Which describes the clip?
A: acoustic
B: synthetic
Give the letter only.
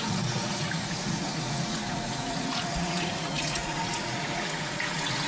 B